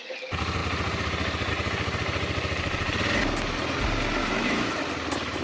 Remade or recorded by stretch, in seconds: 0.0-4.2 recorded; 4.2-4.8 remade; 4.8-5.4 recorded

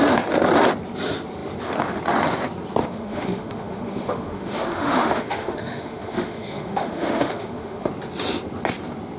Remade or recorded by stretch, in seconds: 0.0-2.8 recorded; 2.8-7.9 remade; 7.9-9.2 recorded